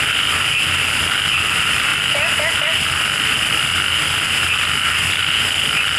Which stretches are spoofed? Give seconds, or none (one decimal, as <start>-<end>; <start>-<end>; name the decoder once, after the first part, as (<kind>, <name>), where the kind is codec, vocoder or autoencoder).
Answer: none